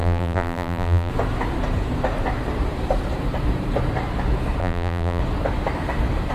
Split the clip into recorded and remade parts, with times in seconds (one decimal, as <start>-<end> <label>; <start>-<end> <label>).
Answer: 0.0-1.1 remade; 1.1-4.6 recorded; 4.6-5.2 remade; 5.2-6.3 recorded